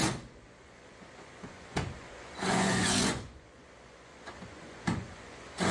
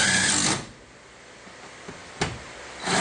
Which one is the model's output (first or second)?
first